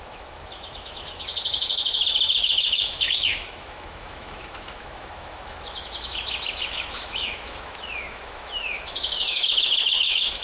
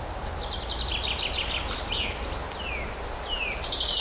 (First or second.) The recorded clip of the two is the second